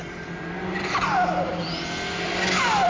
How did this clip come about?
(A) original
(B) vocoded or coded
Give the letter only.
A